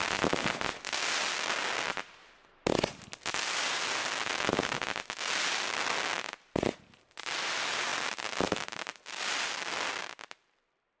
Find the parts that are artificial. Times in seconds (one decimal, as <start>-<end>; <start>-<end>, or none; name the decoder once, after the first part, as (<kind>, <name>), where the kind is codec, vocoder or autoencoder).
none